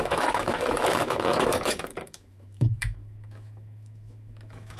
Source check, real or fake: fake